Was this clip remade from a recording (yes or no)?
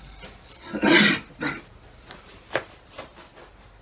no